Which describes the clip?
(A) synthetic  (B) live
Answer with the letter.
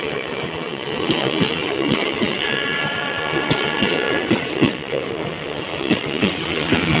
A